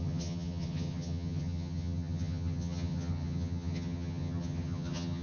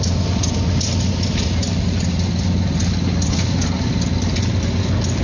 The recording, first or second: second